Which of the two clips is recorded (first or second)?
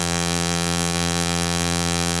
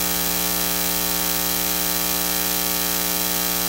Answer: second